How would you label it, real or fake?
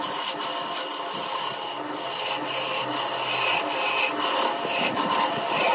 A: real